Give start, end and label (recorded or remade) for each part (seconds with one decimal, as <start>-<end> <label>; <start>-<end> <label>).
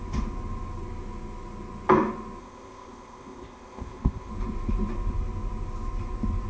0.0-2.4 recorded; 2.4-4.3 remade; 4.3-6.5 recorded